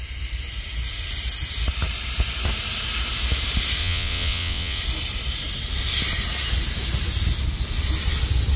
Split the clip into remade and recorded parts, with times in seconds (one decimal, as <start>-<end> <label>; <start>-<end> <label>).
0.0-3.8 recorded; 3.8-4.8 remade; 4.8-8.6 recorded